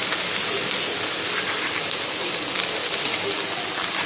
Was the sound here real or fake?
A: real